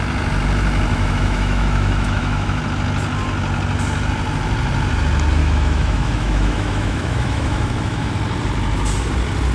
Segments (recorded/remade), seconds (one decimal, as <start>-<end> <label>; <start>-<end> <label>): 0.0-0.9 recorded; 0.9-2.6 remade; 2.6-5.4 recorded; 5.4-8.1 remade; 8.1-9.5 recorded